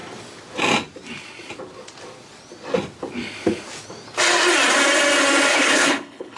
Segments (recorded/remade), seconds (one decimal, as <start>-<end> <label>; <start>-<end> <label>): 0.0-5.5 recorded; 5.5-6.4 remade